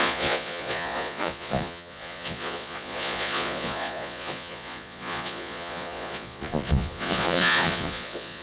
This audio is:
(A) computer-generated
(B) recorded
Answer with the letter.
A